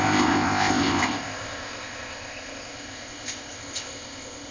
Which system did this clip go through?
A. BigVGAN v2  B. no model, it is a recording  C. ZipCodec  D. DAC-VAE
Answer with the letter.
C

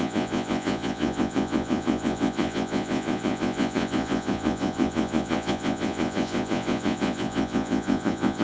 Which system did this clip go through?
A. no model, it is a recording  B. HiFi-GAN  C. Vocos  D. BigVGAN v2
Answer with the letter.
C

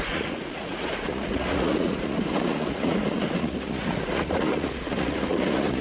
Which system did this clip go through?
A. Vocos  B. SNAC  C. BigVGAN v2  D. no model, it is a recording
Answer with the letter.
A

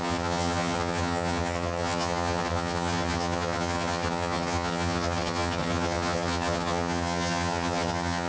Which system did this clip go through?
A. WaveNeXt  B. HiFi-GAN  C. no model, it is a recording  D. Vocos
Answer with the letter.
B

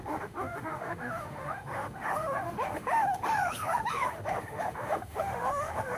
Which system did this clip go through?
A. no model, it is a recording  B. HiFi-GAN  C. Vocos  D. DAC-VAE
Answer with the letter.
D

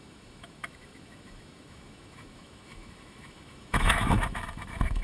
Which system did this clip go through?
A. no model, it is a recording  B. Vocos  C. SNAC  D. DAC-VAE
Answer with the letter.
D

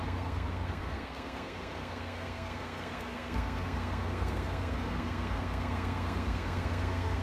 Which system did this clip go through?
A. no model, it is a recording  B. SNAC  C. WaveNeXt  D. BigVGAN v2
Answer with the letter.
B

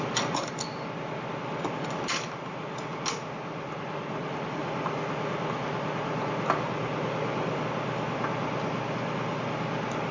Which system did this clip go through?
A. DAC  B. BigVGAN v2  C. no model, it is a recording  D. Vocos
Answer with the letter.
C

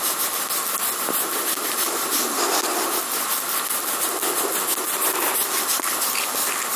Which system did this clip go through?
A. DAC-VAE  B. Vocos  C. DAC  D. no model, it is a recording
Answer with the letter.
D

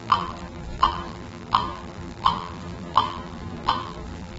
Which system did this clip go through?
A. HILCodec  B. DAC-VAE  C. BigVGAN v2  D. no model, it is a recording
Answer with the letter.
C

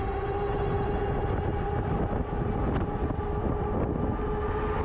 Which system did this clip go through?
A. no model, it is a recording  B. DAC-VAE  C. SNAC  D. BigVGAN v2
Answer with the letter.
A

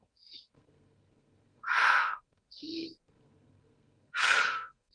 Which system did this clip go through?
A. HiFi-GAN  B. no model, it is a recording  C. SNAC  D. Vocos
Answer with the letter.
C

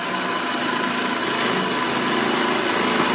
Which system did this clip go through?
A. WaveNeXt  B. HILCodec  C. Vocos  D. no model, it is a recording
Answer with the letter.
D